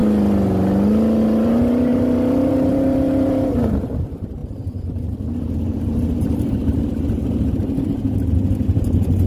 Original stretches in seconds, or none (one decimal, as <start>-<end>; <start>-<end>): 0.0-1.2; 4.4-5.5